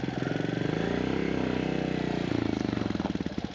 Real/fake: real